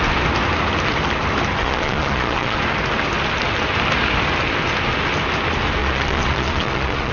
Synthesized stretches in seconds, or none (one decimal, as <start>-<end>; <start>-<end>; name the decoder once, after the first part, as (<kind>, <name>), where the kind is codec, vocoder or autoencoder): 1.6-2.6 (vocoder, Vocos); 5.8-7.1